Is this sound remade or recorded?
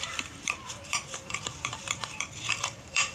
remade